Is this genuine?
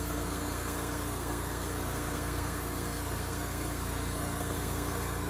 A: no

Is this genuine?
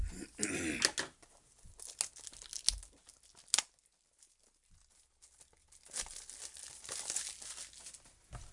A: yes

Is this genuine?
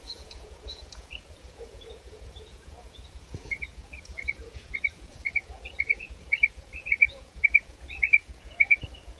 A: no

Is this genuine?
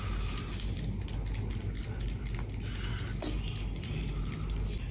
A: yes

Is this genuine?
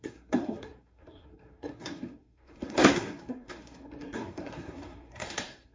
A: no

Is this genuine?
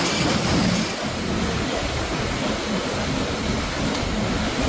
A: yes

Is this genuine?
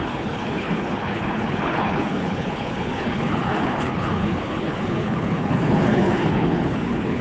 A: no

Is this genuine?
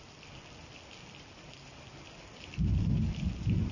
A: yes